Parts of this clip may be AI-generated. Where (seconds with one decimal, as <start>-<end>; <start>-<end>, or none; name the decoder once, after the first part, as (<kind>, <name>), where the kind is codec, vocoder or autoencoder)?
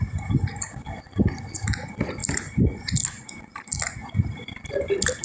none